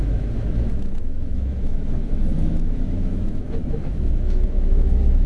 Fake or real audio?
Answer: fake